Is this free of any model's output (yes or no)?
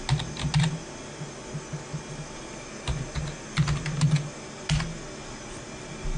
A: yes